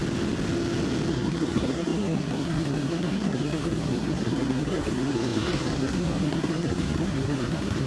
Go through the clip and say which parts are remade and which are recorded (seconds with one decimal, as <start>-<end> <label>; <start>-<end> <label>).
0.0-1.1 recorded; 1.1-7.9 remade